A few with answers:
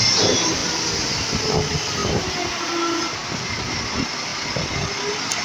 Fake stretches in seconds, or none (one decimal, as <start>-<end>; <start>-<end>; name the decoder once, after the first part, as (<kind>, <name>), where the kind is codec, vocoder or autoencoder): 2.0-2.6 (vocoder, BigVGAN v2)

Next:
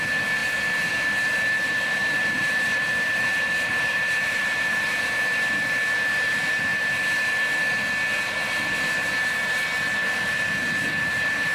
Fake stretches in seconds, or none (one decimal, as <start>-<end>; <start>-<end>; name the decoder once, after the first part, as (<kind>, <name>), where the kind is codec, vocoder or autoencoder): 2.0-5.0 (vocoder, BigVGAN v2)

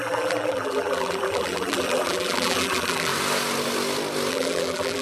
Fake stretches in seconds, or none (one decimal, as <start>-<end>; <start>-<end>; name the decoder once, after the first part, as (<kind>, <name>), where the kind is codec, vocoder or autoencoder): 0.0-3.1 (vocoder, BigVGAN v2); 4.3-5.0

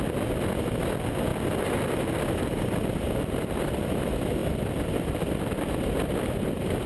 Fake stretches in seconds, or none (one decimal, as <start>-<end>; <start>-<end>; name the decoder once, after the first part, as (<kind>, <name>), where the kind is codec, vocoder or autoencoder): 4.4-5.6 (vocoder, BigVGAN v2)

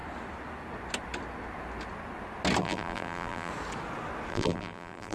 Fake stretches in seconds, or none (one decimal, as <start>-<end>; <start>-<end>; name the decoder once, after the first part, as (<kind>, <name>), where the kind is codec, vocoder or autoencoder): 2.6-3.5 (vocoder, BigVGAN v2); 4.3-5.1